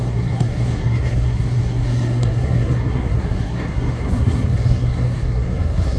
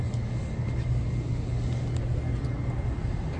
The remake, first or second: first